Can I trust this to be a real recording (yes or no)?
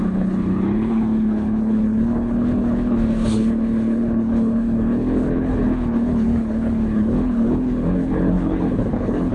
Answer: no